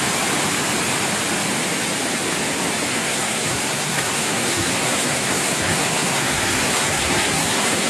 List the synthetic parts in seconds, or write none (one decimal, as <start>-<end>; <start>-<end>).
2.9-7.9